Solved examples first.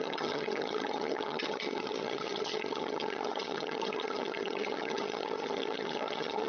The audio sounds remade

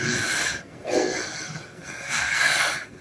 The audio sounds remade